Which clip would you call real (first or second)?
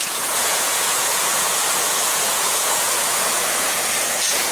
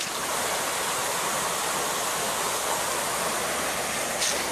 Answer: second